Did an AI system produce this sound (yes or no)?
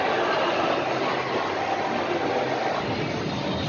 no